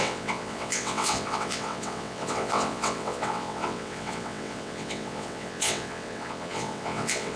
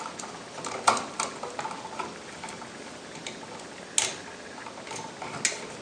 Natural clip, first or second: second